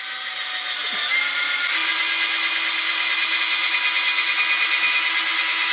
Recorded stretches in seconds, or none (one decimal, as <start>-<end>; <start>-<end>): 0.0-5.7